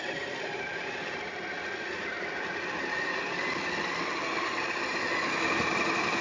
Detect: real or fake real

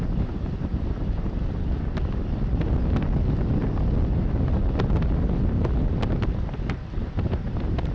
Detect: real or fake real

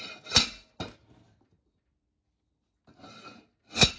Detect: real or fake real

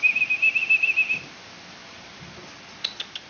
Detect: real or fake real